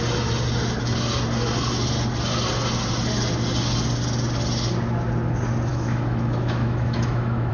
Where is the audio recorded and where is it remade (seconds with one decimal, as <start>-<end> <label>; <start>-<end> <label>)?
0.0-5.7 recorded; 5.7-7.5 remade